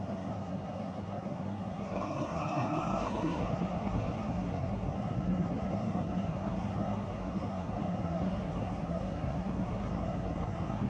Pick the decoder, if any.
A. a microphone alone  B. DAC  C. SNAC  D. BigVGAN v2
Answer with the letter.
C